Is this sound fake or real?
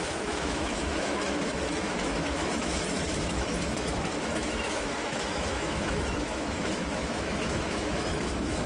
fake